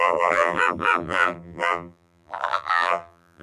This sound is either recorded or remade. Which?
remade